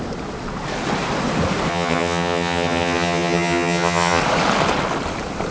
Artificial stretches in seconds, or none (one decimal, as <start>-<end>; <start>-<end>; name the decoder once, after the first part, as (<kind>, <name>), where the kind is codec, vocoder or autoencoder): 1.7-4.2 (vocoder, HiFi-GAN)